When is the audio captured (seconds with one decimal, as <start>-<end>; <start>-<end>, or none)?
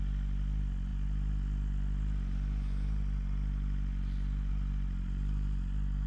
0.0-6.1